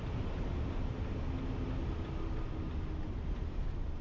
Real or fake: real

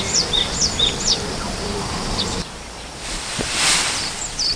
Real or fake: fake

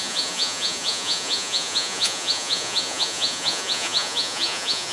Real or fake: fake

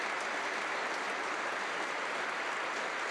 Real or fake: real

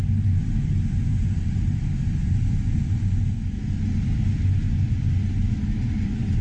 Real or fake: real